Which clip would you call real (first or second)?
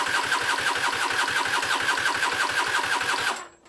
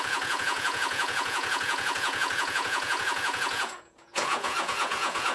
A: first